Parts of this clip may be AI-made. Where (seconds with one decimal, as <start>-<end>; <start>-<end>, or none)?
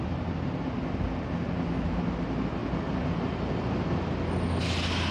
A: none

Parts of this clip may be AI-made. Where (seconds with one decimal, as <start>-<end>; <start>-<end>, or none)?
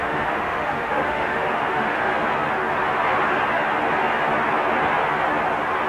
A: 0.0-2.1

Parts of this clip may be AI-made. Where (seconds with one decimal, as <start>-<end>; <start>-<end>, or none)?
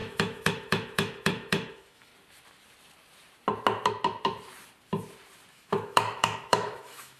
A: 0.0-2.1; 5.5-7.2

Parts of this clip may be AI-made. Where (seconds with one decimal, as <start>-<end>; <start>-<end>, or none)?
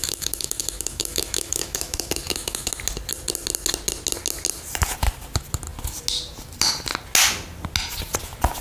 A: 0.0-2.7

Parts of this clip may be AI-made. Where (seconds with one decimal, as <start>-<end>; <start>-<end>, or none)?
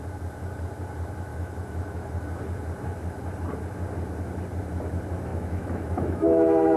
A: 1.3-2.2; 5.3-6.8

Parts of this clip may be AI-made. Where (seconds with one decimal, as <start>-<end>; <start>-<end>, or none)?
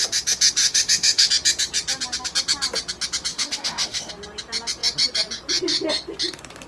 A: 0.6-1.3; 3.3-4.1